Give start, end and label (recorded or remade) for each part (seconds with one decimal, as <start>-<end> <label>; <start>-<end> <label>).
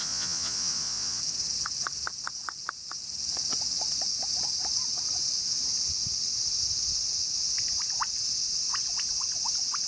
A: 0.0-1.2 remade; 1.2-9.9 recorded